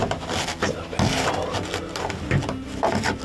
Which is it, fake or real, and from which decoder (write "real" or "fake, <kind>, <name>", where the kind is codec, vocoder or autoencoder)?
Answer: real